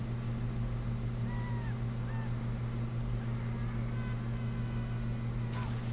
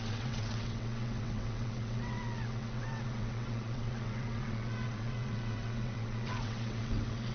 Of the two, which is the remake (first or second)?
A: second